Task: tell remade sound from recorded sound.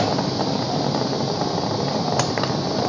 recorded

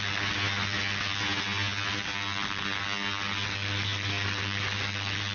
recorded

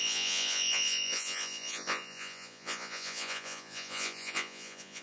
remade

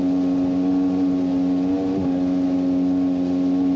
recorded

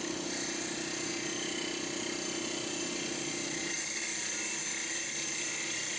recorded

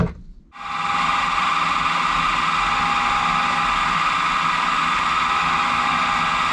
recorded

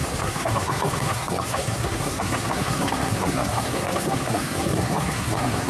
remade